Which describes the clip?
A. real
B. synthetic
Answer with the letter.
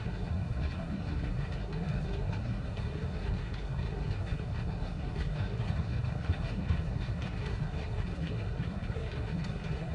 B